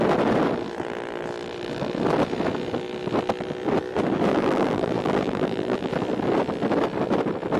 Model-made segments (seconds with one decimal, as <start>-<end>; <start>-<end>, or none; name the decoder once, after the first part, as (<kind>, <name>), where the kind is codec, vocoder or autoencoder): 4.3-5.9 (vocoder, BigVGAN v2)